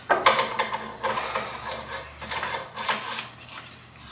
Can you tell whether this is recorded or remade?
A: recorded